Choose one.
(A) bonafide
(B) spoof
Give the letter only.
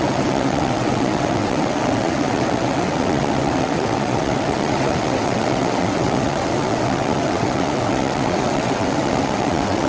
B